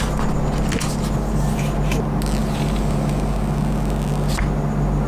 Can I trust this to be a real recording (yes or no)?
yes